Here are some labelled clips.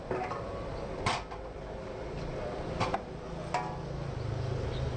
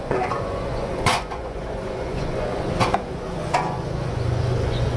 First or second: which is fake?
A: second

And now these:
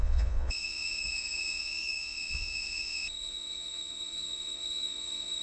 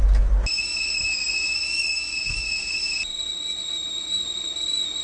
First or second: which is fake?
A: first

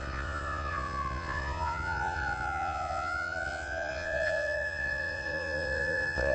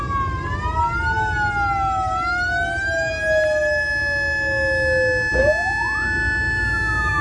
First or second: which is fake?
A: first